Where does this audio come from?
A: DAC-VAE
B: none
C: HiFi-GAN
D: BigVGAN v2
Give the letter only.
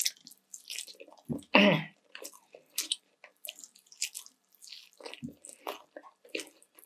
B